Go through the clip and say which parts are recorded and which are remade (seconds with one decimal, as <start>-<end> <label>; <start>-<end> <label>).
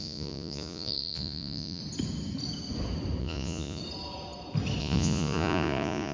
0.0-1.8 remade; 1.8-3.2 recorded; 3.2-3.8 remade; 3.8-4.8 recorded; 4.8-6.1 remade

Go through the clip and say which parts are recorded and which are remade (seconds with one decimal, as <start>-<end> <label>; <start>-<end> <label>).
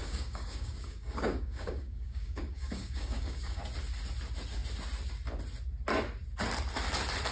0.0-3.6 remade; 3.6-7.3 recorded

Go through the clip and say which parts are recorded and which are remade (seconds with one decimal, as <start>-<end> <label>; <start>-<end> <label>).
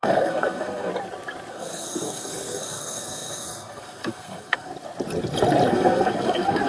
0.0-0.9 remade; 0.9-1.5 recorded; 1.5-4.7 remade; 4.7-5.7 recorded; 5.7-6.7 remade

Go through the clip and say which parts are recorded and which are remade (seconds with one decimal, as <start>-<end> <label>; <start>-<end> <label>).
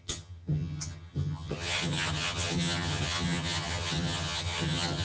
0.0-5.0 remade